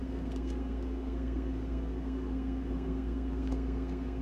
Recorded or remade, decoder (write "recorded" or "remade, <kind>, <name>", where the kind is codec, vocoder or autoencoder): remade, codec, SNAC